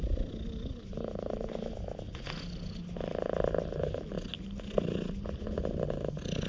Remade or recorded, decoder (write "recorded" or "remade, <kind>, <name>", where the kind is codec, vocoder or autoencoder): recorded